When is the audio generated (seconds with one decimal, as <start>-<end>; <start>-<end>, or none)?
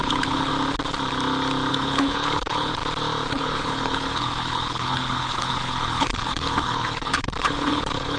0.0-0.5; 1.7-2.8; 3.3-8.2